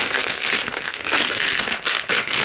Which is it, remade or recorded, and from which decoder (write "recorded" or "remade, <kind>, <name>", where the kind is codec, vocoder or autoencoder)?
remade, codec, SNAC